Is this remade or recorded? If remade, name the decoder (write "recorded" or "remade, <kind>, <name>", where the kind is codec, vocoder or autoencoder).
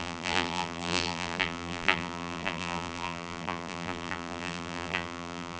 remade, vocoder, BigVGAN v2